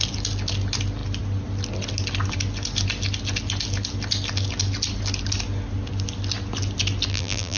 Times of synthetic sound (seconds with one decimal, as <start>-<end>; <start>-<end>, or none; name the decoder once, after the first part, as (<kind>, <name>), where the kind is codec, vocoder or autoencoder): 7.1-7.6 (vocoder, BigVGAN v2)

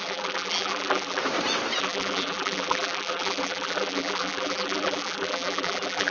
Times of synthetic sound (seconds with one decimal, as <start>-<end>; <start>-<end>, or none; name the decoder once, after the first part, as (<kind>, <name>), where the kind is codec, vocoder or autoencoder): 0.0-1.2 (vocoder, BigVGAN v2); 1.8-6.1

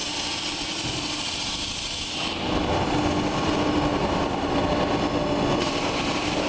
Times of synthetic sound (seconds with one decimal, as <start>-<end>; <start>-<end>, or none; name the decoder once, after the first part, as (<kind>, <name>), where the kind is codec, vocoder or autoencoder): 3.9-4.6 (vocoder, BigVGAN v2); 5.5-6.5

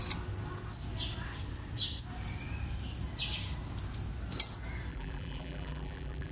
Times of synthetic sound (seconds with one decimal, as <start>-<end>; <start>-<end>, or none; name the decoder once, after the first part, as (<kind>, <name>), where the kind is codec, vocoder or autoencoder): 4.9-6.3 (vocoder, BigVGAN v2)

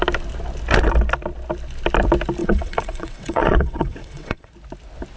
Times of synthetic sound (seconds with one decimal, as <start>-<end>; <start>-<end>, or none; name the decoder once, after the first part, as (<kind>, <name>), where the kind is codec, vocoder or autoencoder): 2.4-4.5 (vocoder, WaveNeXt)

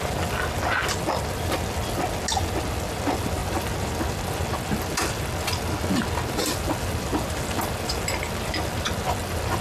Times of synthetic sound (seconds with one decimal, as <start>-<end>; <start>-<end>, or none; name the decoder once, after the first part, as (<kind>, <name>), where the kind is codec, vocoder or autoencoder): none

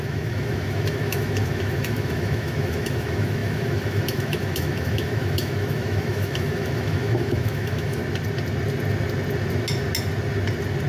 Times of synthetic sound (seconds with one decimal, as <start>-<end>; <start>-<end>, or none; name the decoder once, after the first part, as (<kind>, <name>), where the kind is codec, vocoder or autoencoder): 0.0-8.0 (autoencoder, DAC-VAE)